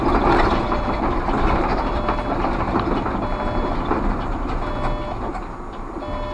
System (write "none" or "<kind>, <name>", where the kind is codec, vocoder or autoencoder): none